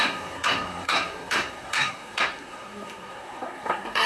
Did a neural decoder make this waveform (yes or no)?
yes